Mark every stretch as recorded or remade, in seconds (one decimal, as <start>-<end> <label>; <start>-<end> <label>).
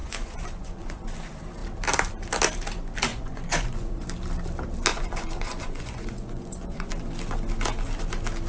0.0-1.0 remade; 1.0-3.1 recorded; 3.1-3.9 remade; 3.9-4.9 recorded; 4.9-6.9 remade; 6.9-8.5 recorded